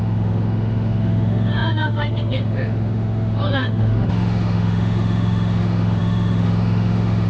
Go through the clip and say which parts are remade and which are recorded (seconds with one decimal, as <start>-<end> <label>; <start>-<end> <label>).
0.0-7.3 remade